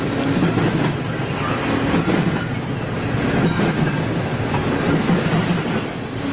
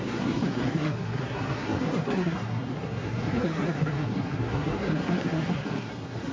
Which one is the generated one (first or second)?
second